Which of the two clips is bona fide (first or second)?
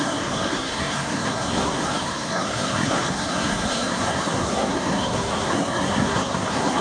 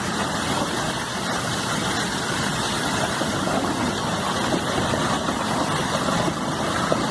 second